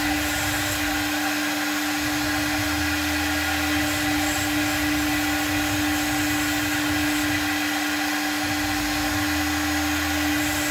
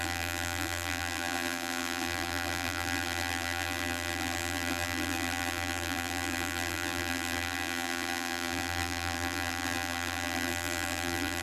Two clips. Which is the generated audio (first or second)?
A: second